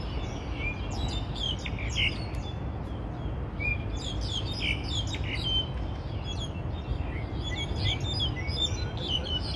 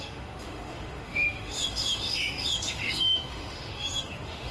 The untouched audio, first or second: first